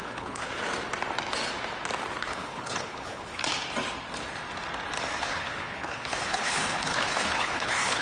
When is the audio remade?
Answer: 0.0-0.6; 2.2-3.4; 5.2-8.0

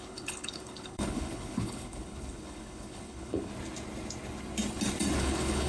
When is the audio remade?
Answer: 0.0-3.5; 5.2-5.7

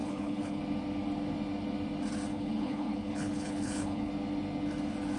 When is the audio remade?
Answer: 0.0-0.6; 2.3-4.1

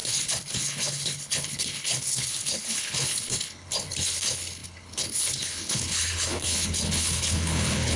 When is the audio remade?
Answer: 0.0-8.0